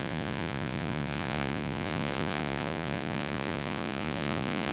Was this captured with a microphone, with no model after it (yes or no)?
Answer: no